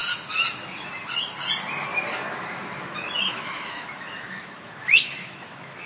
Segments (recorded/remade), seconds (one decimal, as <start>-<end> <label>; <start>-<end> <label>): 0.0-2.8 recorded; 2.8-5.9 remade